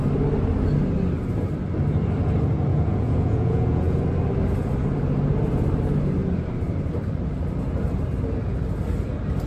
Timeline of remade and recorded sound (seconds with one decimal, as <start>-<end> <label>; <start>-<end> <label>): 0.0-2.7 recorded; 2.7-4.0 remade; 4.0-9.5 recorded